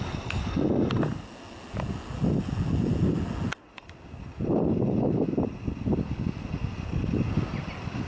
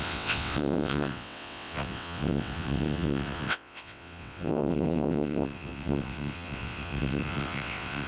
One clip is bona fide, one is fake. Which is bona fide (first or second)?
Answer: first